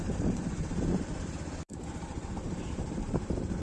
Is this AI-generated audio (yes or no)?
yes